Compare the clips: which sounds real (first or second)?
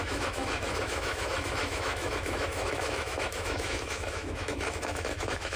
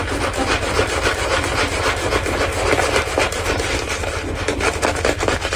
second